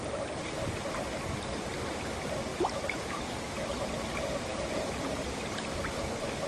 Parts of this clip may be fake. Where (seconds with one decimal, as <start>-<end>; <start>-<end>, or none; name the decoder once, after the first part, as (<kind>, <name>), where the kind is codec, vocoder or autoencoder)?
none